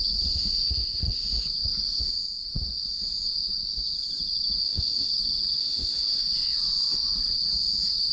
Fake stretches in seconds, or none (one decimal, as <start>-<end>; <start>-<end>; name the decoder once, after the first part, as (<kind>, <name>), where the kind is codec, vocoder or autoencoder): 4.6-5.1 (codec, ZipCodec); 5.6-6.2